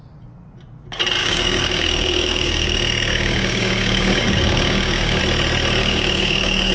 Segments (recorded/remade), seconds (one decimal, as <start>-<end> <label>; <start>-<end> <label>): 0.0-1.2 recorded; 1.2-5.2 remade; 5.2-5.8 recorded; 5.8-6.7 remade